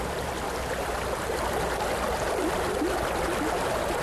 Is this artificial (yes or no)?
no